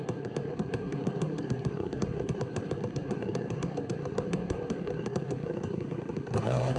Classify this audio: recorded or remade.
remade